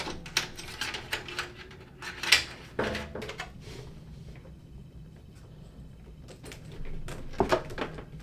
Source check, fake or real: real